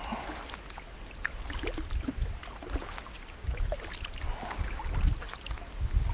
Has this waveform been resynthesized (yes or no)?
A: no